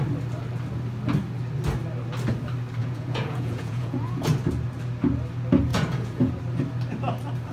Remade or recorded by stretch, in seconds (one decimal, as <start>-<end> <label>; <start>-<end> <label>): 0.0-2.8 recorded; 2.8-4.3 remade; 4.3-5.7 recorded; 5.7-6.3 remade; 6.3-7.5 recorded